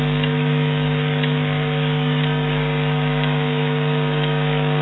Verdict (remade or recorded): remade